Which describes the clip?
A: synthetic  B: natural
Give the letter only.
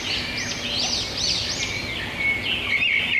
B